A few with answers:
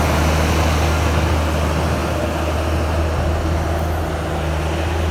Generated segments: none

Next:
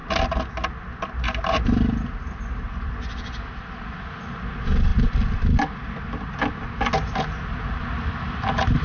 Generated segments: none

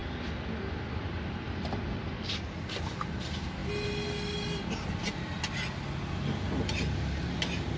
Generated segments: none

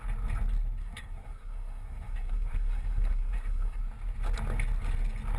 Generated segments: 0.8-3.8 (codec, SNAC)

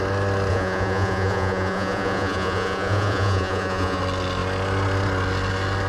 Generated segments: 0.5-4.0 (vocoder, Vocos)

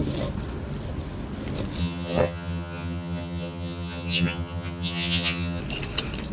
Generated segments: 1.8-5.6 (vocoder, HiFi-GAN)

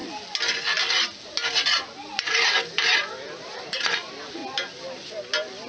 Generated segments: 2.2-4.4 (vocoder, BigVGAN v2)

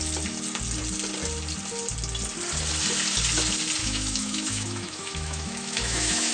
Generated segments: 3.8-6.3 (autoencoder, DAC-VAE)